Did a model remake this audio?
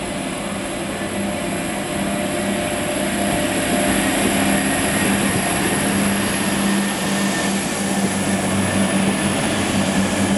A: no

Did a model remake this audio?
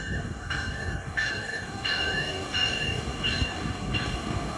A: yes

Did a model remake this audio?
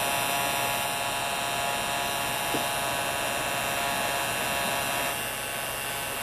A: no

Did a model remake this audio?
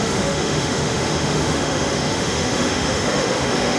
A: yes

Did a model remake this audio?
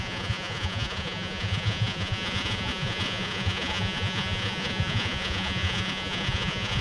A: yes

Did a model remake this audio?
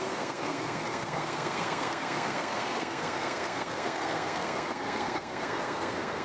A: yes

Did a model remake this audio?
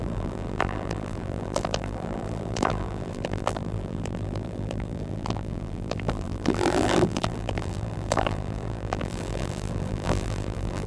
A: yes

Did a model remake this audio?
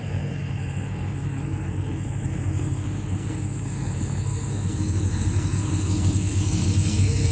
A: yes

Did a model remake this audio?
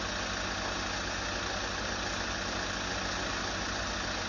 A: no